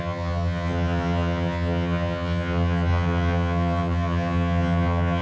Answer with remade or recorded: remade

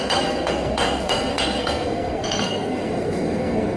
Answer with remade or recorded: remade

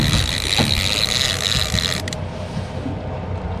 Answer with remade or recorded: recorded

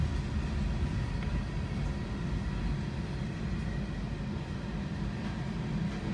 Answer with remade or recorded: recorded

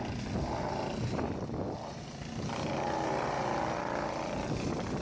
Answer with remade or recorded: recorded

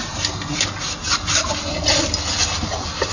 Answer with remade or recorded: recorded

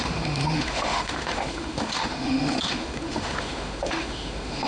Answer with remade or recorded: remade